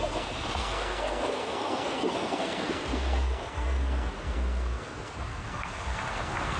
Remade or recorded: remade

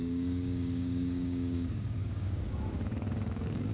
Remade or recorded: remade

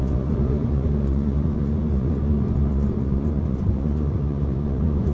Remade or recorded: remade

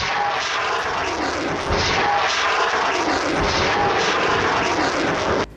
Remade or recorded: recorded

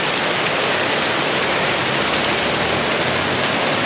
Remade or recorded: recorded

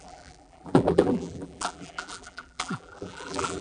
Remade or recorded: remade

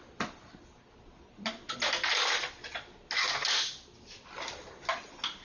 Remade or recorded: recorded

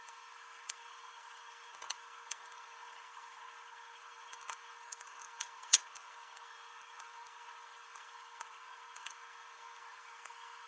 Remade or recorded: remade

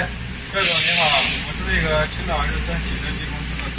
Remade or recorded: recorded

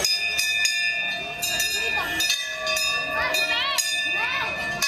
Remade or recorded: recorded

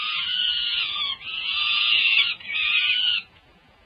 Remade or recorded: remade